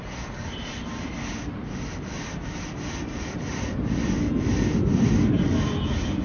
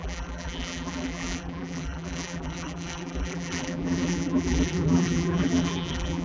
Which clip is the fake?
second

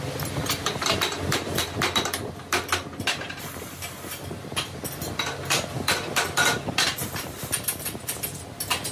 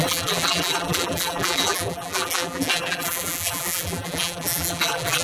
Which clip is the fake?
second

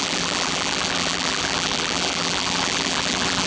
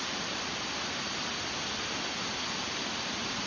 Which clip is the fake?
first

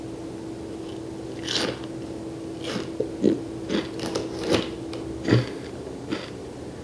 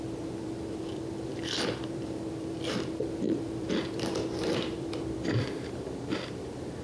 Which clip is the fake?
second